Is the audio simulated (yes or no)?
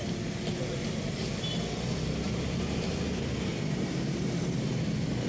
no